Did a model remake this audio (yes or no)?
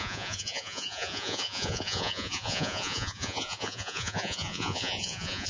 yes